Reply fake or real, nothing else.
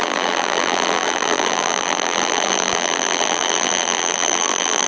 fake